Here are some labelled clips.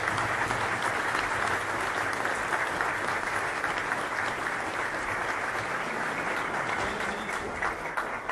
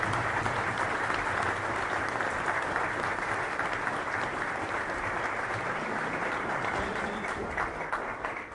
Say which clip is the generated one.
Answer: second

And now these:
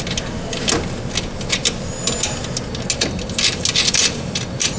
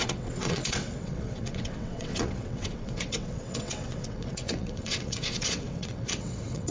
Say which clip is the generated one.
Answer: second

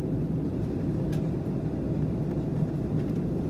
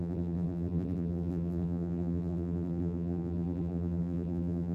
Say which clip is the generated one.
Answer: second